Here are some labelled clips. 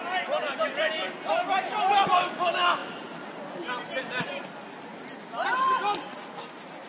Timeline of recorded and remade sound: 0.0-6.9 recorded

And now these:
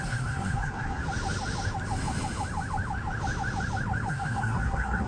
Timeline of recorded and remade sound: 0.0-1.0 remade; 1.0-4.1 recorded; 4.1-5.1 remade

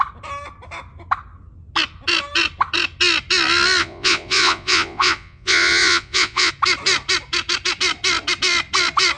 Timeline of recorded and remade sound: 0.0-3.8 recorded; 3.8-6.5 remade; 6.5-9.2 recorded

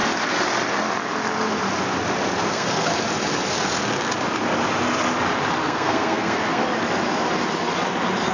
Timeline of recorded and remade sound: 0.0-2.5 recorded; 2.5-2.9 remade; 2.9-5.6 recorded; 5.6-6.6 remade; 6.6-8.3 recorded

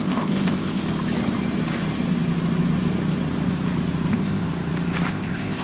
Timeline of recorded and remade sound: 0.0-0.8 remade; 0.8-4.1 recorded; 4.1-4.5 remade; 4.5-5.1 recorded; 5.1-5.6 remade